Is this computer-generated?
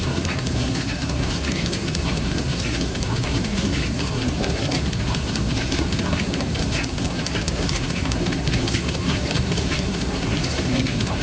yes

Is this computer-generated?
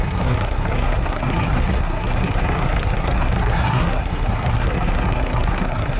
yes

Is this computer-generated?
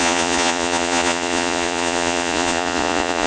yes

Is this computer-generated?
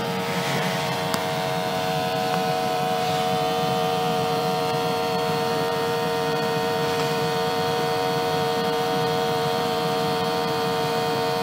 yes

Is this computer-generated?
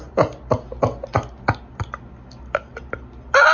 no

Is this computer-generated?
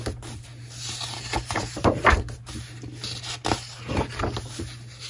no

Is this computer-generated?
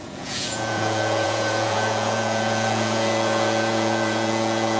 yes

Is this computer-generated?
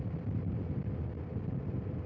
no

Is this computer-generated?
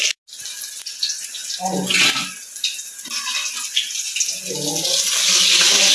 no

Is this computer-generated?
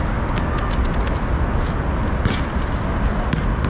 no